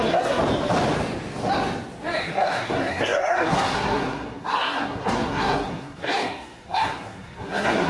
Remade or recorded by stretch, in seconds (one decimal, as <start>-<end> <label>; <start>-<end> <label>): 0.0-0.4 remade; 0.4-2.2 recorded; 2.2-7.9 remade